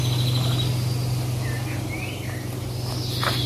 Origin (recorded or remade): recorded